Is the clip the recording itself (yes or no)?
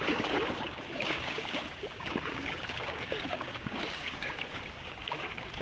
no